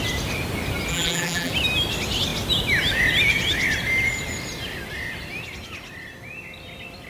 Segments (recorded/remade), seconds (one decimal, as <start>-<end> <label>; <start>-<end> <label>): 0.0-0.9 recorded; 0.9-1.5 remade; 1.5-7.1 recorded